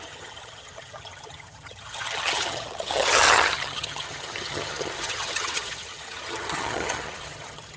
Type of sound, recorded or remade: remade